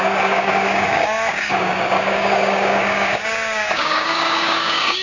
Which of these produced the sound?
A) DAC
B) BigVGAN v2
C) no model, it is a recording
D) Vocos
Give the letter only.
A